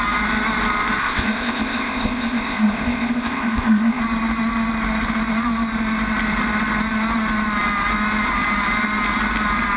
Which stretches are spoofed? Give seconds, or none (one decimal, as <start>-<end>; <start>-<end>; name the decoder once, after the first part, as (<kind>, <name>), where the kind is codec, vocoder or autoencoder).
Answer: 1.0-4.0 (codec, ZipCodec)